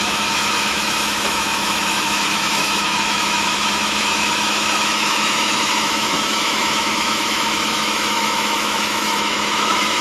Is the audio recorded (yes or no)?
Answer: no